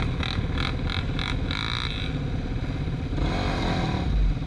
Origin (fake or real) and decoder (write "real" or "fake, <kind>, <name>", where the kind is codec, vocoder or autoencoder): real